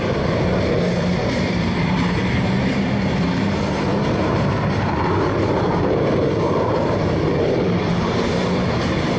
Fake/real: fake